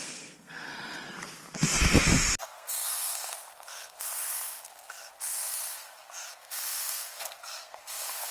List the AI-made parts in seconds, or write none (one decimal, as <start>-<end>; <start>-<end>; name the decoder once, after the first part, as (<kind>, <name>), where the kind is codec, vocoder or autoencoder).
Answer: 0.0-0.7 (codec, SNAC); 2.4-8.3